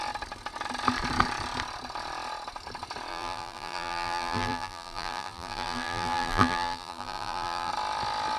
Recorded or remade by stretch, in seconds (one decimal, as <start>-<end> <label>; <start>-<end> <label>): 0.0-3.1 recorded; 3.1-7.7 remade; 7.7-8.4 recorded